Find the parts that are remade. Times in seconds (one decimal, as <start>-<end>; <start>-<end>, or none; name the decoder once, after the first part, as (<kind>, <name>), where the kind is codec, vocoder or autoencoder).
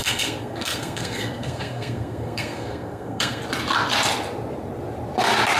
0.0-3.4 (codec, SNAC)